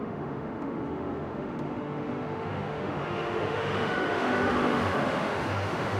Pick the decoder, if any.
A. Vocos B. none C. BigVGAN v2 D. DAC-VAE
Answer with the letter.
D